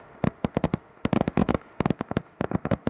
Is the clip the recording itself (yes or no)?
no